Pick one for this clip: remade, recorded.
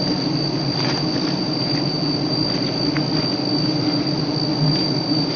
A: recorded